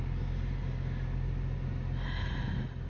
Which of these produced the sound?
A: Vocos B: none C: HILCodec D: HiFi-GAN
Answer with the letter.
B